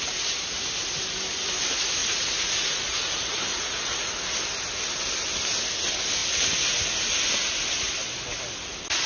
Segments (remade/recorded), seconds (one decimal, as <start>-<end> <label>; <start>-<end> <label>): 0.0-2.0 recorded; 2.0-4.1 remade; 4.1-9.1 recorded